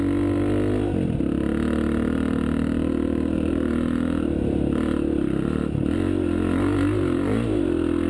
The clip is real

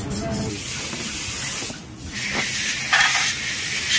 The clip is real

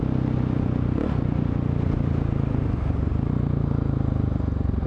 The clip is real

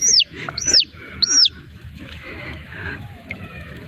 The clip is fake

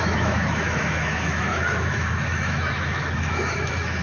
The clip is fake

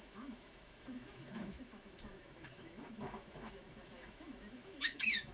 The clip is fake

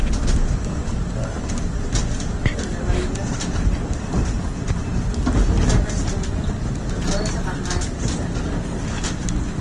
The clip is real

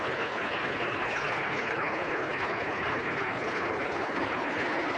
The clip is fake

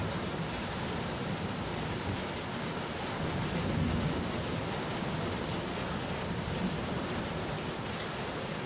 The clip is real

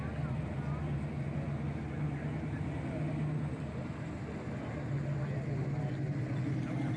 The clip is real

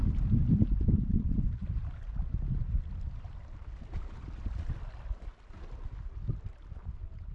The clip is real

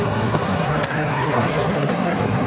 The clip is fake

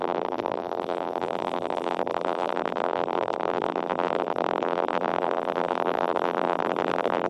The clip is fake